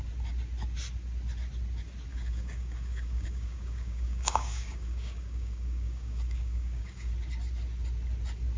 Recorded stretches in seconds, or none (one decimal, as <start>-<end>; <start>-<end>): 0.0-2.1; 7.1-8.6